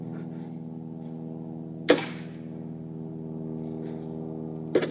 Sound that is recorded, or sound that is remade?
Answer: recorded